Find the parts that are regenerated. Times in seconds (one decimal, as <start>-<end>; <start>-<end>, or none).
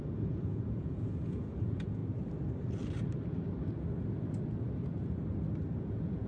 0.0-2.0; 5.8-6.3